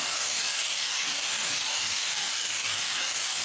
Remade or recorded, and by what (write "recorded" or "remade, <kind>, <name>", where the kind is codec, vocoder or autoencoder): remade, codec, DAC